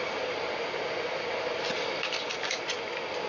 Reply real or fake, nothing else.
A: real